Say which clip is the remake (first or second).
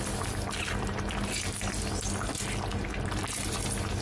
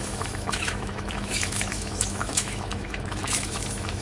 second